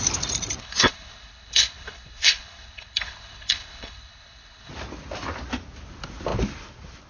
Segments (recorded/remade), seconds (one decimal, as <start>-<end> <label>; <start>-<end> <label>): 0.0-0.6 recorded; 0.6-4.7 remade; 4.7-7.1 recorded